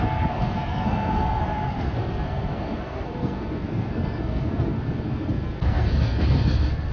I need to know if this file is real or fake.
fake